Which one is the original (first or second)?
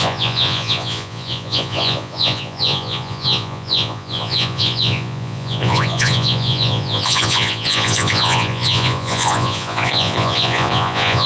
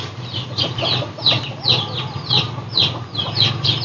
second